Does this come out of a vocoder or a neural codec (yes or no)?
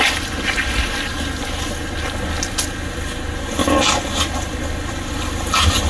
no